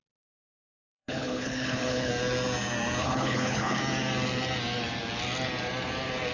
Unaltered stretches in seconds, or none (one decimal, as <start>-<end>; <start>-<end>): 0.0-0.8; 2.1-3.0; 3.8-6.3